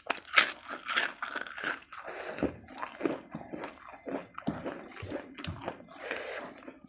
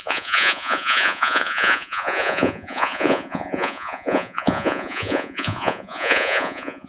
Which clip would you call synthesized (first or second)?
second